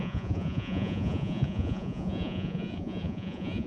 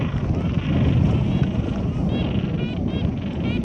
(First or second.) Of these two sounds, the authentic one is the second